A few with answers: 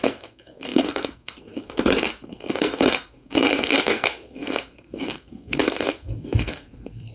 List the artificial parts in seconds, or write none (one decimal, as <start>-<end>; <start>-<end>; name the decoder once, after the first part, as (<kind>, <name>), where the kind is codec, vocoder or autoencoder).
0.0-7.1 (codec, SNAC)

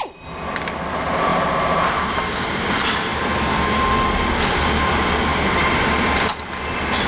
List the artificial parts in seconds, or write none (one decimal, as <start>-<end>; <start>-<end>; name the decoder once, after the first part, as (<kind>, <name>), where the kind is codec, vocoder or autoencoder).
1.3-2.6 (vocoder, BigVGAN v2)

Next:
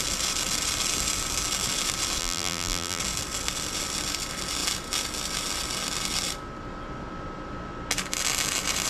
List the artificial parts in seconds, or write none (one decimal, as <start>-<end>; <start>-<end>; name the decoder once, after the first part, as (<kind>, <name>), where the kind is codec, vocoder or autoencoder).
2.2-3.0 (vocoder, BigVGAN v2)

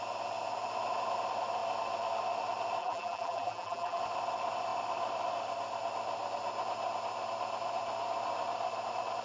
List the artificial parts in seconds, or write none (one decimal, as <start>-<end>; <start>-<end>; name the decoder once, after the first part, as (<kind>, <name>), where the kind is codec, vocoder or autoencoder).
2.8-4.0 (vocoder, BigVGAN v2)

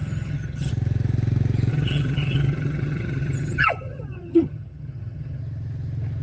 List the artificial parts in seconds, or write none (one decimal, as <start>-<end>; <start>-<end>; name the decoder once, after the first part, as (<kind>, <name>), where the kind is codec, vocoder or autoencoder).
0.0-0.7 (vocoder, HiFi-GAN); 1.7-5.4

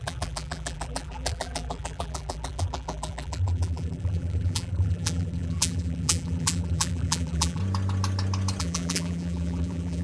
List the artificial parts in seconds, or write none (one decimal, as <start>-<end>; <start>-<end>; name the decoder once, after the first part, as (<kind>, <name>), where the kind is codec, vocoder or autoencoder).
0.0-7.6 (vocoder, BigVGAN v2); 8.6-10.0